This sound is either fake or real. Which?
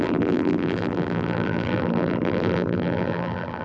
fake